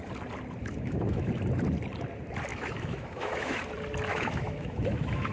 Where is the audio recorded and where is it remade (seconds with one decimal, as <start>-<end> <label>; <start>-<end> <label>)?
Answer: 0.0-0.6 recorded; 0.6-1.4 remade; 1.4-2.5 recorded; 2.5-3.6 remade; 3.6-4.1 recorded; 4.1-5.3 remade